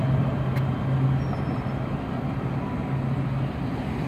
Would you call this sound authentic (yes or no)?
yes